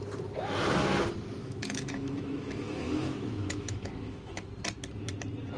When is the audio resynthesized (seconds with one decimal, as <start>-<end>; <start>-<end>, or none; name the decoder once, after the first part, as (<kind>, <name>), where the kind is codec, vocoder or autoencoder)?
1.4-4.5 (autoencoder, DAC-VAE)